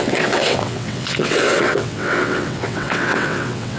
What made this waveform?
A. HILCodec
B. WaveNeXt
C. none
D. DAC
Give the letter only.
B